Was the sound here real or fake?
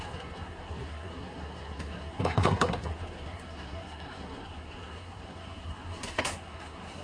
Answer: fake